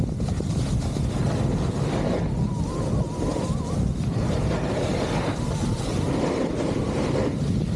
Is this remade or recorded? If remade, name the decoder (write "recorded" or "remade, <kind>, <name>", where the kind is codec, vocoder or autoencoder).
recorded